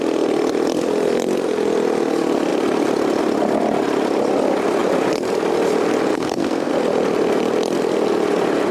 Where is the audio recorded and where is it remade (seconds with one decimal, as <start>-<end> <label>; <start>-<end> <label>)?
0.0-6.1 recorded; 6.1-6.7 remade; 6.7-8.7 recorded